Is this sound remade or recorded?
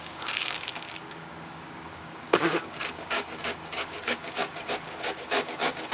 remade